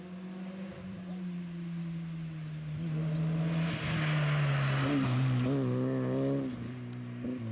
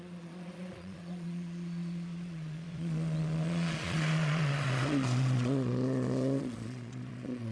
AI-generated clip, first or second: second